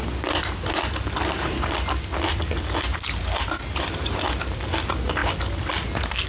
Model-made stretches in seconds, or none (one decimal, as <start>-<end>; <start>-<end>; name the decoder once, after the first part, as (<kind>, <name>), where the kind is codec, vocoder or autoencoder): none